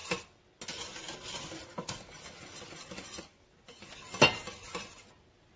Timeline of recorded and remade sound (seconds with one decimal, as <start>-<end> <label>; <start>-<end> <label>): 0.0-5.6 recorded